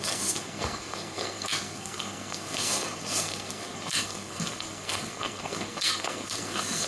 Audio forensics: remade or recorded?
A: remade